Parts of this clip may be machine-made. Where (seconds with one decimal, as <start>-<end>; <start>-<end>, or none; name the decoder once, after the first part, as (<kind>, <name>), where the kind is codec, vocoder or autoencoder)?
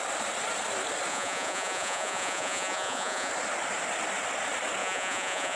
1.1-3.3 (vocoder, Vocos); 4.8-5.6